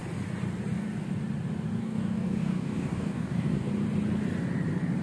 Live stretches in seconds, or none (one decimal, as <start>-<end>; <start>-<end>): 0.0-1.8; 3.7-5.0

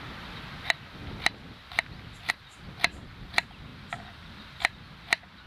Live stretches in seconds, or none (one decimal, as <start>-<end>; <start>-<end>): 0.0-3.7; 4.9-5.5

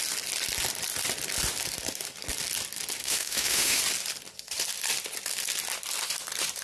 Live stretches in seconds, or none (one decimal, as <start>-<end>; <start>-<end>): 0.0-3.0; 3.8-6.6

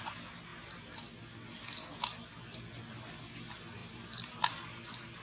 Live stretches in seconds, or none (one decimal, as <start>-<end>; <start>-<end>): 0.0-3.8; 4.4-5.2

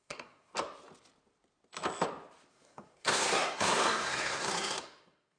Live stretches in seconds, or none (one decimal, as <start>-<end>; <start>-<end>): 0.5-2.5

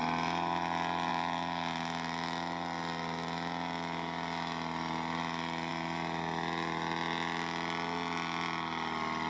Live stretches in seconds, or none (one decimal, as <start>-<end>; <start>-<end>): 0.0-9.3

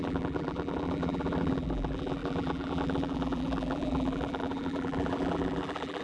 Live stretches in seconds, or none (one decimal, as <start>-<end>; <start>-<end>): none

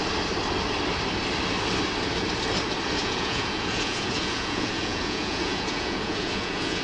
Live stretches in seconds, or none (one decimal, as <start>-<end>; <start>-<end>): 0.0-3.0